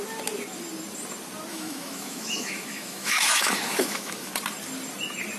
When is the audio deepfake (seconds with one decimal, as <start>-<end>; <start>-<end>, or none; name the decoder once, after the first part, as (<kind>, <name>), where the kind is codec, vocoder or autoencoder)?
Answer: 1.5-4.3 (autoencoder, DAC-VAE)

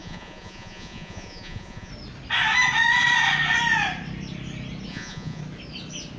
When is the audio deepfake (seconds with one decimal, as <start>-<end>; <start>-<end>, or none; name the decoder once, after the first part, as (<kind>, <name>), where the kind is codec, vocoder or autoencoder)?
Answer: 0.0-1.9 (vocoder, Vocos); 4.9-5.4

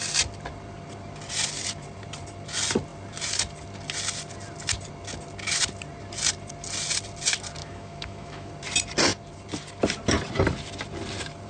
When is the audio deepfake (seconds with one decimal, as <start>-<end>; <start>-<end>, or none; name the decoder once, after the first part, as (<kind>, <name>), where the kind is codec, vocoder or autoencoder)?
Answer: 7.6-8.5 (autoencoder, DAC-VAE)

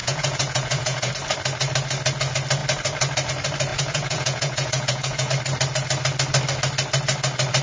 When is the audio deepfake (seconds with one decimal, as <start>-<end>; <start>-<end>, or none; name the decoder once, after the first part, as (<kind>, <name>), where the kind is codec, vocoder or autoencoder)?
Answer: 0.0-1.1 (vocoder, Vocos); 3.7-5.3